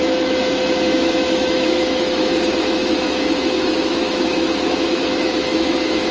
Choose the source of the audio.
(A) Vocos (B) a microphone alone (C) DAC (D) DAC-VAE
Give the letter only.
D